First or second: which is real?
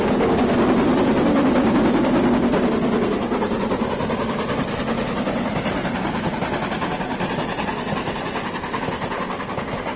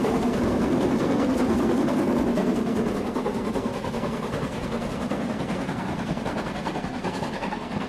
first